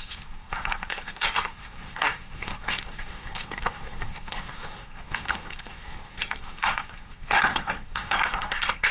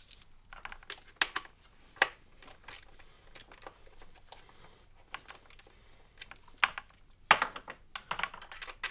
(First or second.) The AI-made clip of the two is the first